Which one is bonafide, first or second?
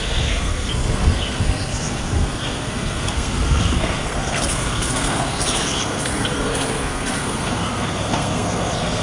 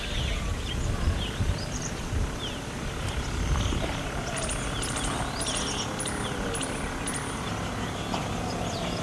second